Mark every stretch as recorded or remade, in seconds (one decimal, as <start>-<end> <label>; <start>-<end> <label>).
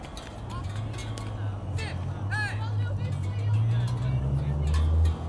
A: 0.0-5.3 recorded